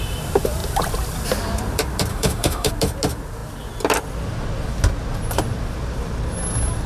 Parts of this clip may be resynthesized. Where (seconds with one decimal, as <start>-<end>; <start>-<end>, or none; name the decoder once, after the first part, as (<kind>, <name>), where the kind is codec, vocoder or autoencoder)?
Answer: 2.1-2.7 (autoencoder, DAC-VAE)